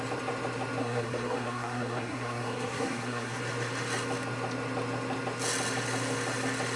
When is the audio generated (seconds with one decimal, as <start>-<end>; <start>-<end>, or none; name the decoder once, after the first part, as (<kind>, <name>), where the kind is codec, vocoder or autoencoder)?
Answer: 0.8-3.4 (codec, SNAC)